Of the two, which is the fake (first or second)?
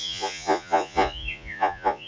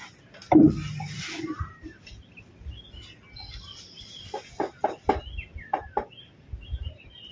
first